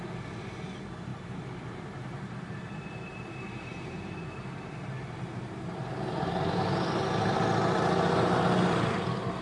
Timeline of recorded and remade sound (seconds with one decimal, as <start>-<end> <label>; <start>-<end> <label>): 0.0-1.1 recorded; 1.1-3.2 remade; 3.2-3.7 recorded; 3.7-6.1 remade; 6.1-9.4 recorded